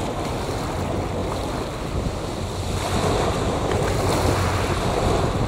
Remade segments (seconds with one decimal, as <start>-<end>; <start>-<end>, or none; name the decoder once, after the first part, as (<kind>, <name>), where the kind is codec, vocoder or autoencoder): none